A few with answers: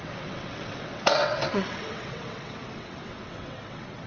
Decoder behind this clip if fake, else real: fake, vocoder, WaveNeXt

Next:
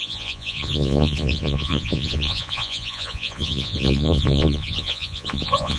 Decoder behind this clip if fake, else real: fake, vocoder, Vocos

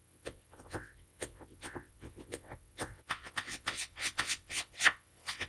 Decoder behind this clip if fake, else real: fake, vocoder, WaveNeXt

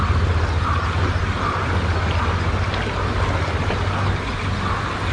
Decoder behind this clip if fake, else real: real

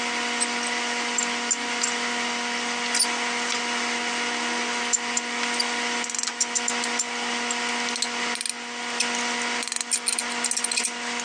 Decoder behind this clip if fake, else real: real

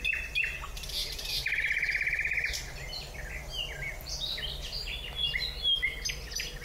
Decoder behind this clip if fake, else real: real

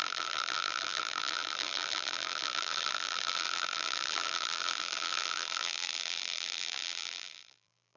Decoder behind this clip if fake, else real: fake, vocoder, BigVGAN v2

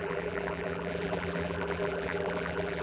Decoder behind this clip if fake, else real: fake, vocoder, BigVGAN v2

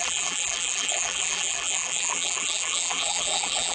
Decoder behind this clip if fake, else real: fake, vocoder, BigVGAN v2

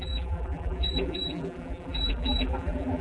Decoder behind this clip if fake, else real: fake, vocoder, BigVGAN v2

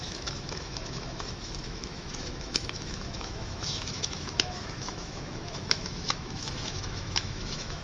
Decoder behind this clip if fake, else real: fake, autoencoder, DAC-VAE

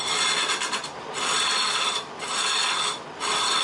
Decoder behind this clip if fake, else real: real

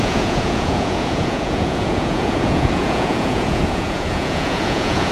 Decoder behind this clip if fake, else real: fake, vocoder, Vocos